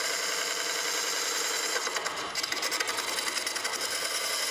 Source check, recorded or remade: recorded